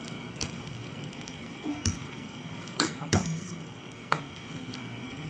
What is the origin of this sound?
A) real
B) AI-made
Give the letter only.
B